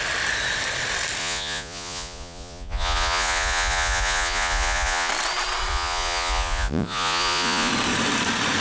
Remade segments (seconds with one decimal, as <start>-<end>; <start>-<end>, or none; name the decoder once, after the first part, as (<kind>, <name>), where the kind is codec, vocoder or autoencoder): 1.2-5.1 (vocoder, Vocos); 5.7-7.7